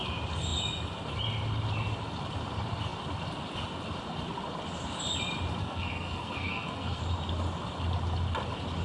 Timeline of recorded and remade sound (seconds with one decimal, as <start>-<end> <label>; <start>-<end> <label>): 0.0-5.6 recorded; 5.6-7.0 remade; 7.0-8.8 recorded